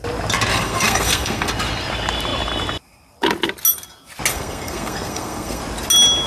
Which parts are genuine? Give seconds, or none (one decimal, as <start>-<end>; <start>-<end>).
0.0-0.5; 1.5-4.3; 5.6-6.3